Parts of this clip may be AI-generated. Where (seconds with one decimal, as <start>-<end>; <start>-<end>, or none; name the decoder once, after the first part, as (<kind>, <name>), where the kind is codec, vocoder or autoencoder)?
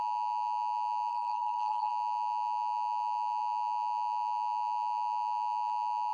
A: 1.1-1.9 (codec, SNAC)